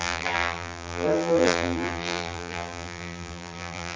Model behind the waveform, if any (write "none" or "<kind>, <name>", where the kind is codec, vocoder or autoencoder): vocoder, BigVGAN v2